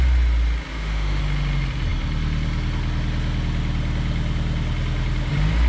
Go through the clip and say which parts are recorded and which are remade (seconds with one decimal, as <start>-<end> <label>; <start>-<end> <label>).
0.0-0.7 recorded; 0.7-1.2 remade; 1.2-5.7 recorded